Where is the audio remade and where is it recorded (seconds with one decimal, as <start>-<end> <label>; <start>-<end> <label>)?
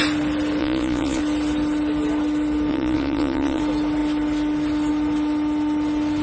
0.0-0.6 recorded; 0.6-1.2 remade; 1.2-2.7 recorded; 2.7-3.6 remade; 3.6-6.2 recorded